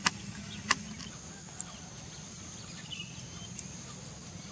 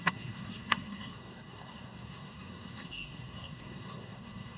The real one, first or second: first